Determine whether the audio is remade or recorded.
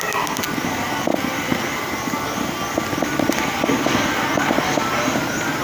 recorded